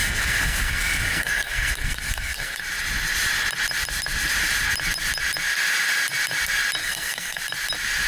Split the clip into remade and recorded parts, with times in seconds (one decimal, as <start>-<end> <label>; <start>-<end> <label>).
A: 0.0-2.6 remade; 2.6-6.8 recorded; 6.8-7.4 remade; 7.4-8.1 recorded